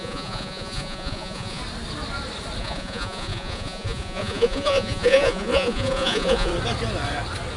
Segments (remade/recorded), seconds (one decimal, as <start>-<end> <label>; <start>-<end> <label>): 0.0-1.6 remade; 1.6-2.6 recorded; 2.6-6.5 remade; 6.5-7.6 recorded